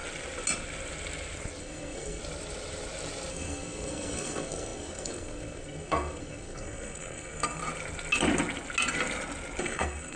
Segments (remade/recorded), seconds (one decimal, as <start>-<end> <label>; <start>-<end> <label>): 0.0-1.6 recorded; 1.6-2.2 remade; 2.2-3.3 recorded; 3.3-7.6 remade; 7.6-9.6 recorded; 9.6-10.2 remade